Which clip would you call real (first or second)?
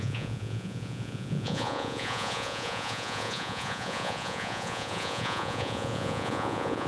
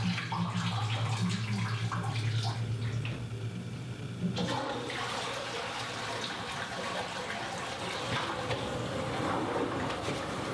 second